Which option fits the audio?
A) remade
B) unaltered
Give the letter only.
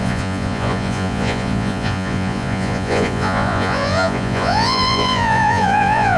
A